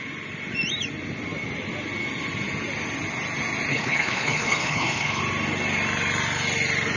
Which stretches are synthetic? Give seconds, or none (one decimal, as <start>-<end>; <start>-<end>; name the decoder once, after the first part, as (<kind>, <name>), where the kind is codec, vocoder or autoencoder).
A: 3.7-5.2 (codec, HILCodec)